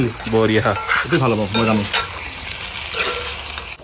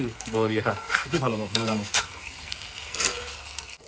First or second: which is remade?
second